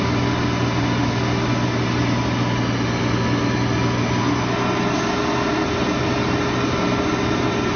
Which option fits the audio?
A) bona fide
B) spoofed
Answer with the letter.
A